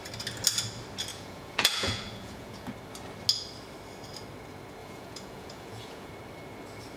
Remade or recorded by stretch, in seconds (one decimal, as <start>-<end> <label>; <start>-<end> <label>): 0.0-1.1 recorded; 1.1-2.7 remade; 2.7-4.8 recorded; 4.8-6.1 remade; 6.1-7.0 recorded